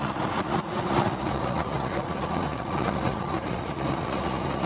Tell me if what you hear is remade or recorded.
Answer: remade